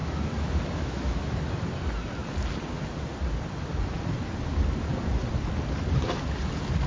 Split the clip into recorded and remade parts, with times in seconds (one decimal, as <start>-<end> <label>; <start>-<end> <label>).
0.0-1.4 remade; 1.4-6.9 recorded